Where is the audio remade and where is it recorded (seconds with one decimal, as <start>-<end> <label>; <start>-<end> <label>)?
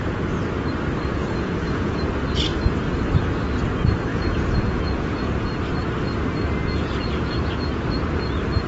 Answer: 0.0-1.2 recorded; 1.2-2.0 remade; 2.0-4.1 recorded; 4.1-5.7 remade; 5.7-6.6 recorded; 6.6-7.4 remade; 7.4-8.7 recorded